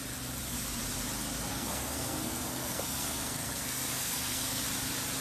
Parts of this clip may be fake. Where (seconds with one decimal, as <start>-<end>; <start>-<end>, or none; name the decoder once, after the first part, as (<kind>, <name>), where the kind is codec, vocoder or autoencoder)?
1.5-4.6 (codec, SNAC)